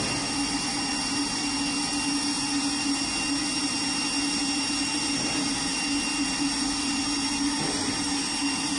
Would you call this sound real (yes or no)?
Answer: yes